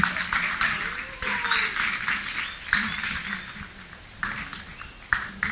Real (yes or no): yes